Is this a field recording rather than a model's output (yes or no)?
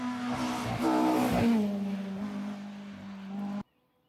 yes